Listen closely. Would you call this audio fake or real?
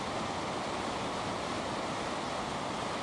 real